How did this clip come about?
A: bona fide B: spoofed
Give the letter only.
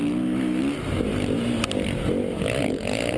A